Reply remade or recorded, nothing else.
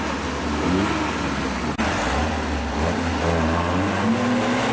recorded